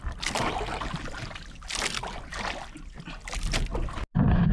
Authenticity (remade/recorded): recorded